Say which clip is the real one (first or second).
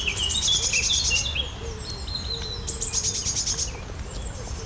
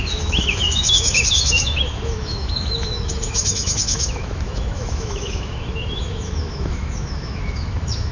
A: first